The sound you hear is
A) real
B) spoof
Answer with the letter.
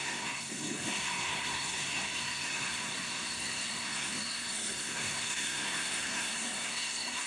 B